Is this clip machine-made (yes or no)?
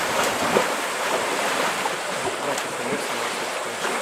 yes